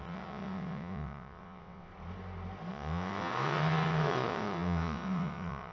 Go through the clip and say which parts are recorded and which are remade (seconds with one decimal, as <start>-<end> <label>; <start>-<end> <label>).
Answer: 0.0-1.9 remade; 1.9-2.7 recorded; 2.7-5.7 remade